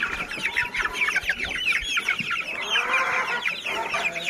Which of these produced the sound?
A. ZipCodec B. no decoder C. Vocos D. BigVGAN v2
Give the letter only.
B